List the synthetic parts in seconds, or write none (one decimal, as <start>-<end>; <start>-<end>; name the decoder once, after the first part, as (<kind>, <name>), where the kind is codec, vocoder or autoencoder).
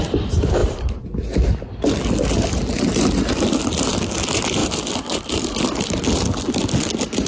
0.6-4.1 (vocoder, BigVGAN v2); 4.6-5.8